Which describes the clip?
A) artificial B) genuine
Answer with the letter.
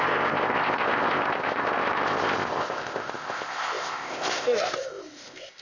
A